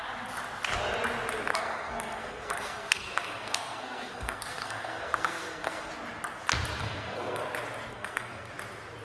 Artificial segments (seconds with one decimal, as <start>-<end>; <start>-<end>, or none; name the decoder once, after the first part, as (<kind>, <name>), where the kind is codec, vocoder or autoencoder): 1.5-5.9 (codec, SNAC); 6.8-7.4; 7.9-8.5